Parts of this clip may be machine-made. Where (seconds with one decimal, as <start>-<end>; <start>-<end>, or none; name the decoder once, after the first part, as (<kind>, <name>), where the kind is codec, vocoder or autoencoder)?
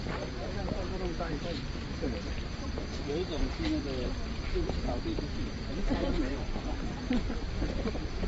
0.0-0.9 (vocoder, BigVGAN v2); 5.2-8.3